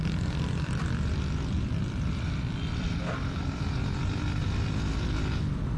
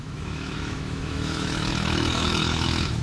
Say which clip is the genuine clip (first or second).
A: first